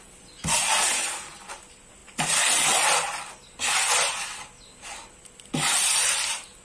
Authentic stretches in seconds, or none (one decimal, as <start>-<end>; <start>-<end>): 0.0-6.6